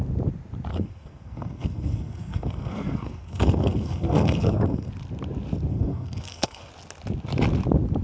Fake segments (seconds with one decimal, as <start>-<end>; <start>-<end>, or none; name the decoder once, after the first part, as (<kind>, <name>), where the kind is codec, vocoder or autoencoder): 0.7-4.9 (codec, SNAC); 5.7-6.7